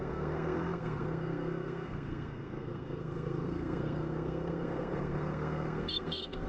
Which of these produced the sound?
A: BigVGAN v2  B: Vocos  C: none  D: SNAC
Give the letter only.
D